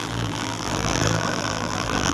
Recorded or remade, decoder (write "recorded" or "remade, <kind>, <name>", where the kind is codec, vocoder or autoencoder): remade, vocoder, BigVGAN v2